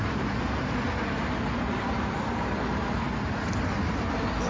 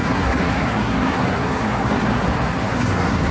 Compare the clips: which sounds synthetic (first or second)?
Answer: second